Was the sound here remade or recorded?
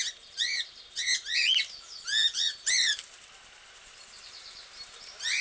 recorded